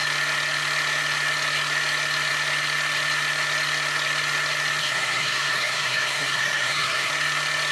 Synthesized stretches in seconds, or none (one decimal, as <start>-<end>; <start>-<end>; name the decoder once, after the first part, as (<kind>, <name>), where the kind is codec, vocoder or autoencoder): 4.8-7.1 (codec, SNAC)